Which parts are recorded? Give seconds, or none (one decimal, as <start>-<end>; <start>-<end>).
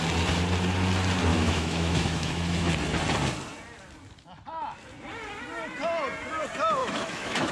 0.0-1.3; 2.7-6.8